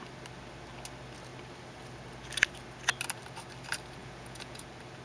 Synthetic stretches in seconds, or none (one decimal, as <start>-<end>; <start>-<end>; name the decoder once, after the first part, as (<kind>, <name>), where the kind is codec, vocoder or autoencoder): 4.0-4.6 (vocoder, Vocos)